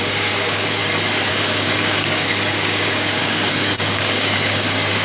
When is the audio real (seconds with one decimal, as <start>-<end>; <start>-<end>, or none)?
0.8-1.3

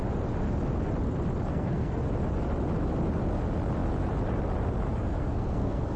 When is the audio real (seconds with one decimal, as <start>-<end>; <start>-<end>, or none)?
0.0-1.5; 2.0-5.0

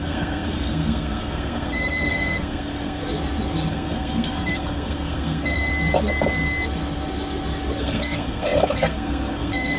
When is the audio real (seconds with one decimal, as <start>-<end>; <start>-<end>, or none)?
3.0-3.7; 5.7-7.8

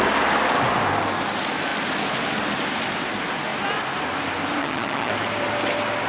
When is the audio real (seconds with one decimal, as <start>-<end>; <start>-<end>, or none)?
0.0-4.6; 5.1-6.1

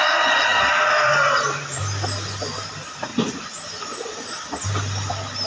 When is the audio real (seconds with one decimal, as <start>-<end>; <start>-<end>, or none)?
0.0-5.5

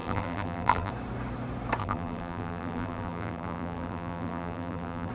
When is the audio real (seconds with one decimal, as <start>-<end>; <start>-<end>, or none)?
0.9-1.8

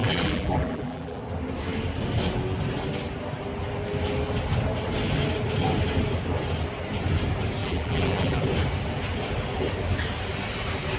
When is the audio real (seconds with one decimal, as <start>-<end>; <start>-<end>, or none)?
1.2-7.6; 8.4-11.0

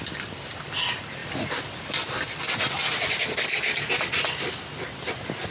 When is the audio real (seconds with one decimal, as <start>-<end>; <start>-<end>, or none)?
0.0-5.5